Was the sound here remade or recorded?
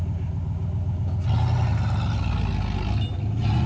recorded